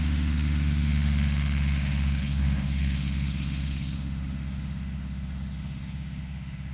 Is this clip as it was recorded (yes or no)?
no